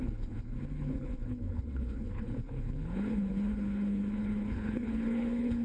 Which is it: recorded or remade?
remade